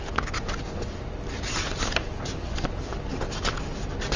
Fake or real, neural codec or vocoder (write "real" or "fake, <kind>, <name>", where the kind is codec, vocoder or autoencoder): real